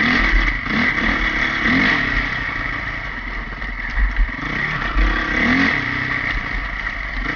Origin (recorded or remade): recorded